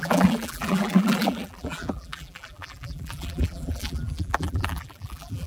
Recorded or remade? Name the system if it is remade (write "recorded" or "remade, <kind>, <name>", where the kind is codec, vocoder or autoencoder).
remade, vocoder, BigVGAN v2